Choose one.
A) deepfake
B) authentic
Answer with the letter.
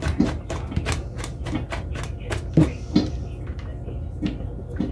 B